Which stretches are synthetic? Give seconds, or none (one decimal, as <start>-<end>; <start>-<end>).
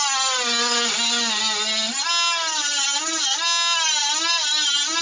none